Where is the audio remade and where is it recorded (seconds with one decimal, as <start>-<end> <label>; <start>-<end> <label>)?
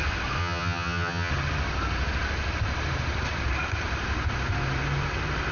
0.0-0.4 recorded; 0.4-1.3 remade; 1.3-5.5 recorded